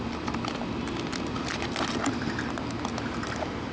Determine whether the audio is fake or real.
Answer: real